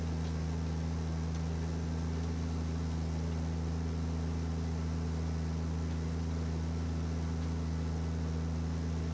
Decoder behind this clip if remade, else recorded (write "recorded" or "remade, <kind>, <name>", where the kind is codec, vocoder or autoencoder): recorded